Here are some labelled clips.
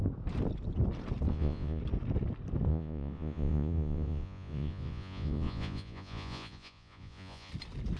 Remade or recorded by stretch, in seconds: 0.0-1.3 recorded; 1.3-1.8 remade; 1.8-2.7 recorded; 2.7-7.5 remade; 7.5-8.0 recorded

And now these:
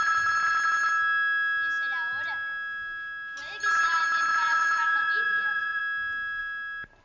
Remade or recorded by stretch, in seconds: 0.0-4.3 recorded; 4.3-5.8 remade; 5.8-7.0 recorded

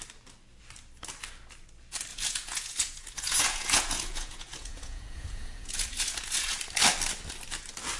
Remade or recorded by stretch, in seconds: 0.0-2.1 recorded; 2.1-6.6 remade; 6.6-8.0 recorded

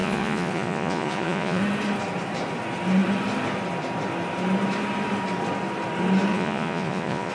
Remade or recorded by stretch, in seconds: 0.0-1.6 remade; 1.6-6.3 recorded; 6.3-7.3 remade

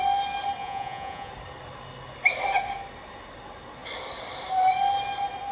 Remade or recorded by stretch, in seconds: 0.0-0.6 recorded; 0.6-1.3 remade; 1.3-5.5 recorded

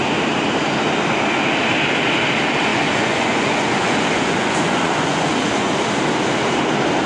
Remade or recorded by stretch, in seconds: 0.0-2.7 recorded; 2.7-5.8 remade; 5.8-7.1 recorded

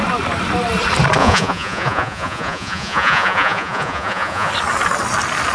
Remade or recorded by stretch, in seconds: 0.0-1.2 recorded; 1.2-4.5 remade; 4.5-5.5 recorded